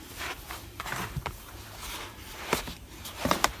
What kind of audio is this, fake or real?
fake